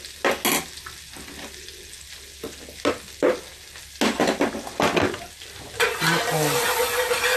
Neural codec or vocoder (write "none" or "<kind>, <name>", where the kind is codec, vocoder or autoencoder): none